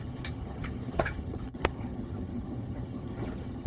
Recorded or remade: remade